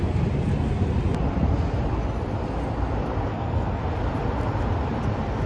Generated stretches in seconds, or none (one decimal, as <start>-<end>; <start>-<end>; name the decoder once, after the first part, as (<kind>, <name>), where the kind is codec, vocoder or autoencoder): 3.3-3.8 (codec, SNAC)